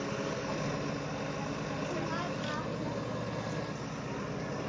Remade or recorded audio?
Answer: recorded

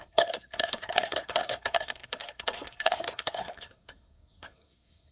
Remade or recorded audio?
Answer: remade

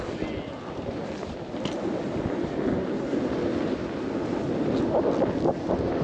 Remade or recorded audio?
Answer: recorded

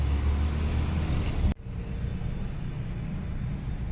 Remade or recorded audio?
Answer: recorded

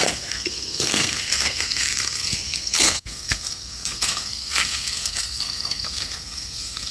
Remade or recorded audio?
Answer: remade